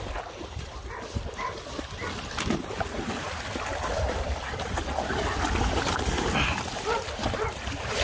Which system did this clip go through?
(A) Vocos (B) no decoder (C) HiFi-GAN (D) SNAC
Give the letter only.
B